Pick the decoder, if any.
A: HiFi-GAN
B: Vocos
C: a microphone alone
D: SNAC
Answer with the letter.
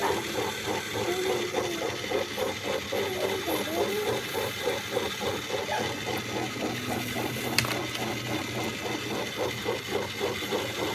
C